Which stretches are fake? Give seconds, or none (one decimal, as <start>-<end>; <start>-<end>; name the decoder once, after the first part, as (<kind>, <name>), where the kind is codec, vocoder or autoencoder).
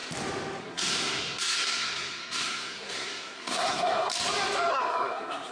0.6-4.1 (codec, SNAC); 4.7-5.5